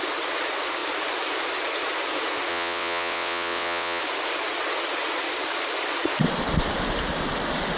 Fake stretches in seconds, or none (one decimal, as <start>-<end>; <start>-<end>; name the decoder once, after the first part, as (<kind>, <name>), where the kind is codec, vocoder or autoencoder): 2.5-4.0 (vocoder, WaveNeXt)